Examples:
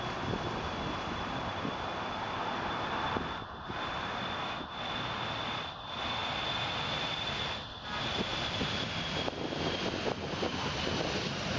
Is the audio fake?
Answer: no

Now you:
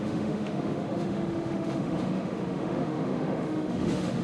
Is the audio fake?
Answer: yes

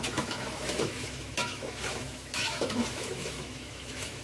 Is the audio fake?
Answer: yes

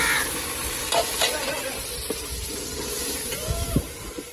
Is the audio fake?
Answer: no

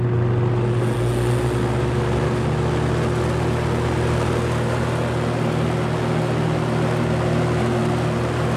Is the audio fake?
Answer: no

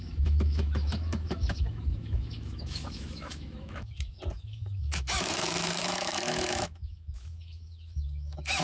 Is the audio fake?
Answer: yes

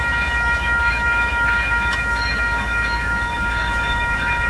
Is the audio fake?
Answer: yes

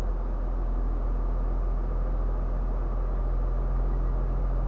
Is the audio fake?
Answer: no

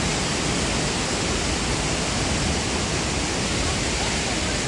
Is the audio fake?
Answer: no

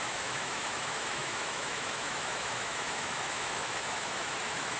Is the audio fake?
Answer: yes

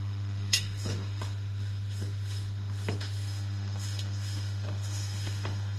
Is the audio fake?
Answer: yes